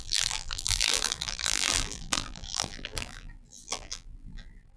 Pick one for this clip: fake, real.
fake